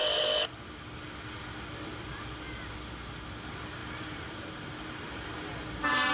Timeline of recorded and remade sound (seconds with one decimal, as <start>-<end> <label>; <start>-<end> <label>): 0.0-3.8 recorded; 3.8-6.1 remade